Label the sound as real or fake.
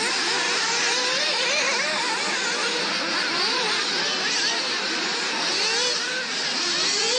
real